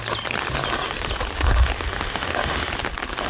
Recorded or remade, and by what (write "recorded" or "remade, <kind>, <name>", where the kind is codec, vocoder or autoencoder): recorded